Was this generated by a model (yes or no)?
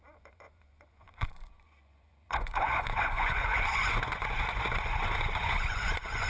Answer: yes